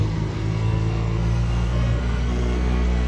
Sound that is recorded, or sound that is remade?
remade